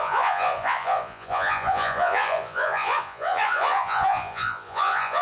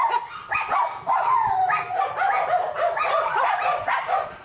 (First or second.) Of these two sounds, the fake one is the first